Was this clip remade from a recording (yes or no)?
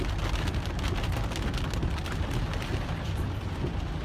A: no